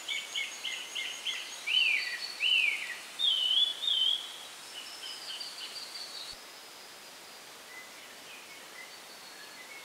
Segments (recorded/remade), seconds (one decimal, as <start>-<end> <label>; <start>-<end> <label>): 0.0-9.8 recorded